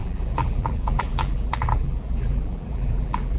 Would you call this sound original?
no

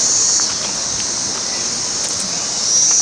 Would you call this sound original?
yes